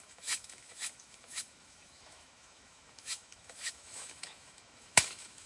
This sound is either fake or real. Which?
fake